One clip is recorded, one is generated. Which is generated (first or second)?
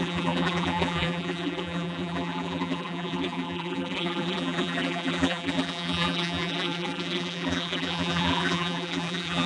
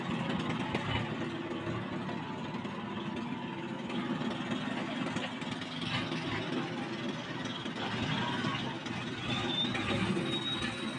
first